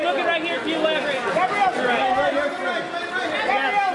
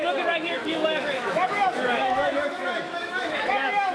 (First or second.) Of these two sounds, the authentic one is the first